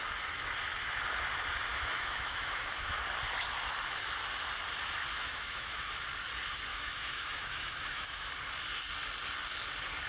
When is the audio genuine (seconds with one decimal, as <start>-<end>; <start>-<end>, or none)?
0.0-1.7; 3.0-5.1; 5.9-6.7; 8.3-10.1